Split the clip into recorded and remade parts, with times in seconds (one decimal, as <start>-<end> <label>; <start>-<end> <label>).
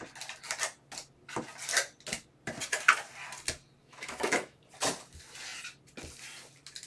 0.0-3.8 recorded; 3.8-4.6 remade; 4.6-6.9 recorded